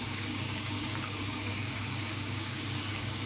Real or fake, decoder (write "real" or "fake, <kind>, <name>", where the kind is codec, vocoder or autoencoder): fake, codec, DAC